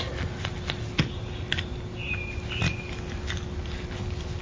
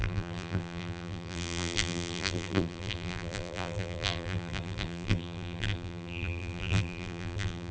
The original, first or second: first